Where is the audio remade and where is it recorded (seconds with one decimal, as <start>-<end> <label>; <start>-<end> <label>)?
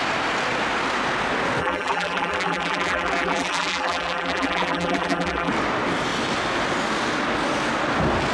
0.0-1.6 recorded; 1.6-5.5 remade; 5.5-8.3 recorded